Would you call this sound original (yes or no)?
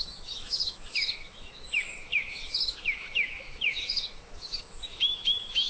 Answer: no